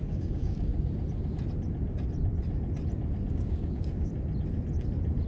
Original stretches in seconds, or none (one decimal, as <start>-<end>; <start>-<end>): 0.7-3.3; 4.1-5.3